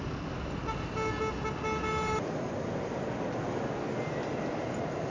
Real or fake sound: real